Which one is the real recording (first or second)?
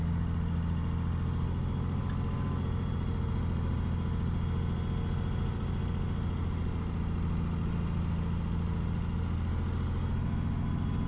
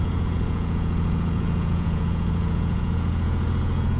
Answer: first